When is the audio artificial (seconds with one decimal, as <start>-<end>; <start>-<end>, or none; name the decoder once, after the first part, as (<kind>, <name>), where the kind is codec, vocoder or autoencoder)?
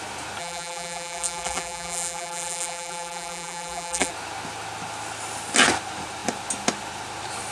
0.4-4.1 (vocoder, BigVGAN v2)